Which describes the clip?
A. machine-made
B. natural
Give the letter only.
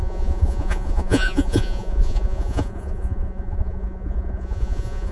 A